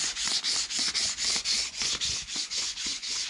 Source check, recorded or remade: remade